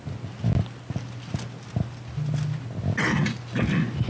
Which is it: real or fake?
real